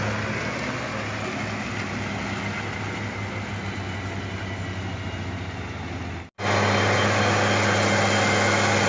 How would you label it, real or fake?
real